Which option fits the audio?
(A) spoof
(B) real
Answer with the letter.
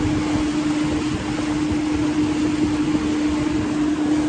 B